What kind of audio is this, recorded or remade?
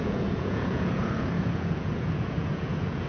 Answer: remade